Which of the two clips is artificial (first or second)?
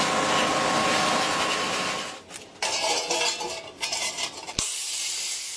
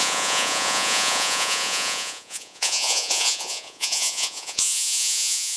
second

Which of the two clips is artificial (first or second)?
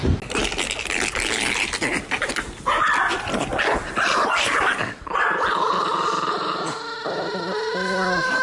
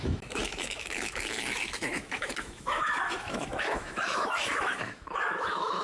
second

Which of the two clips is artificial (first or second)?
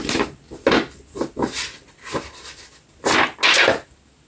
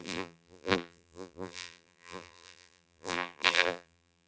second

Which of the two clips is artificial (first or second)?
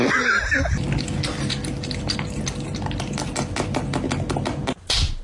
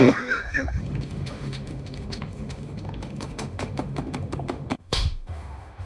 second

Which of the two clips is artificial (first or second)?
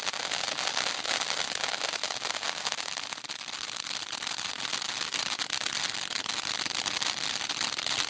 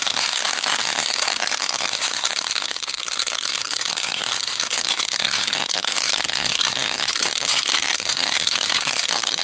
second